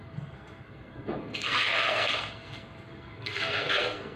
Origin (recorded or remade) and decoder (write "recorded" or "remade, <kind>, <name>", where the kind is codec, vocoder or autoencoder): remade, codec, SNAC